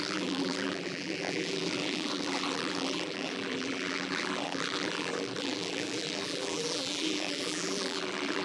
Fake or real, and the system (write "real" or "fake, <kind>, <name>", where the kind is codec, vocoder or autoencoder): fake, vocoder, BigVGAN v2